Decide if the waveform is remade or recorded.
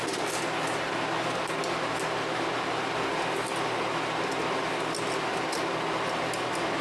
recorded